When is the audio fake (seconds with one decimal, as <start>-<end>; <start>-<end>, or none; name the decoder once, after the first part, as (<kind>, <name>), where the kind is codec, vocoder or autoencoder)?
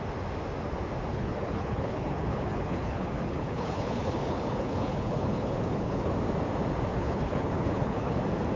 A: 1.1-6.1 (codec, HILCodec); 6.9-8.2